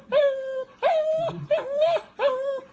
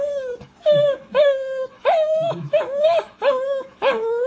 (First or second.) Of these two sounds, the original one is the first